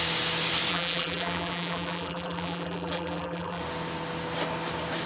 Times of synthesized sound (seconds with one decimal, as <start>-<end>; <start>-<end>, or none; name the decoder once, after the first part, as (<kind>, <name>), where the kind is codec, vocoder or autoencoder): 0.7-3.6 (vocoder, BigVGAN v2)